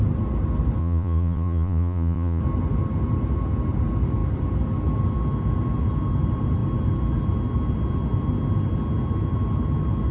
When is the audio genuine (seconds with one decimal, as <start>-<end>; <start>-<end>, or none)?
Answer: 0.0-0.8; 2.4-10.1